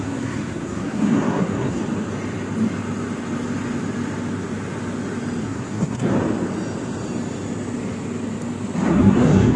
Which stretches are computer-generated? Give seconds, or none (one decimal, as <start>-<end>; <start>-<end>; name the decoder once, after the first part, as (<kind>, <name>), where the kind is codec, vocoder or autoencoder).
0.0-1.8 (codec, SNAC); 5.4-6.1; 8.9-9.6